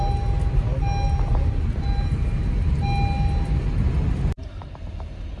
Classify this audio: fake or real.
real